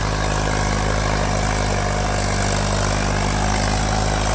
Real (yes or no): yes